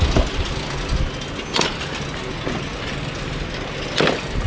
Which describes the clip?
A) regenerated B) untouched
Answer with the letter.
B